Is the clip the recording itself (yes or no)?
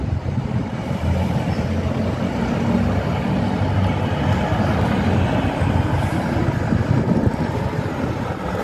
yes